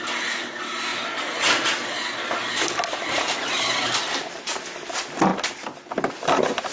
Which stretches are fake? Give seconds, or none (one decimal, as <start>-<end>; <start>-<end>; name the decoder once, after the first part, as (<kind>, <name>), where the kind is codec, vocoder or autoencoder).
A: none